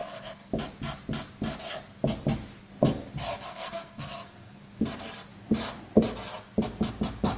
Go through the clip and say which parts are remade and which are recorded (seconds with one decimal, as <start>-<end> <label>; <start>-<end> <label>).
0.0-0.5 remade; 0.5-3.5 recorded; 3.5-4.6 remade; 4.6-7.4 recorded